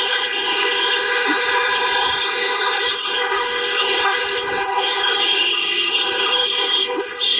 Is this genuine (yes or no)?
no